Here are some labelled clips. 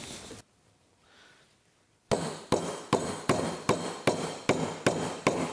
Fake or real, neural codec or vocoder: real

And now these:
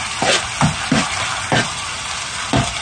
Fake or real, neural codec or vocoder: real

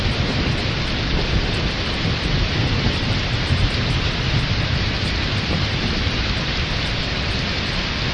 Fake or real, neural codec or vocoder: fake, vocoder, BigVGAN v2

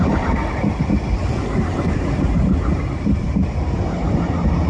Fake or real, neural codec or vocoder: real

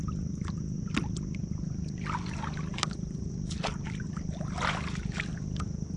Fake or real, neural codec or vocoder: real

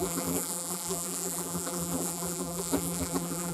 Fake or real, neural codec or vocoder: fake, vocoder, BigVGAN v2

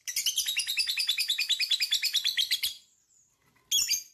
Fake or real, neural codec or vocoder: real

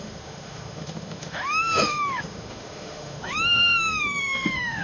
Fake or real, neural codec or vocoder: fake, autoencoder, DAC-VAE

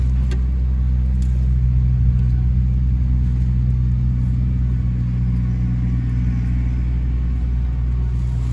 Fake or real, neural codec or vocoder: real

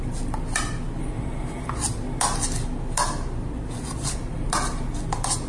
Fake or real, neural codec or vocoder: real